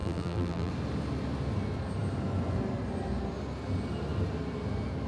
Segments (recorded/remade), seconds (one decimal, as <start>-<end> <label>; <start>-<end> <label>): 0.0-0.7 remade; 0.7-5.1 recorded